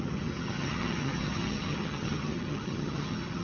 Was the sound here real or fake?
fake